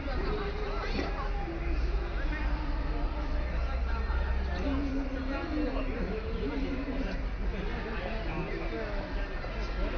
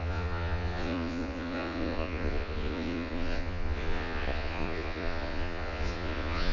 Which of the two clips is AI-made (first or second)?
second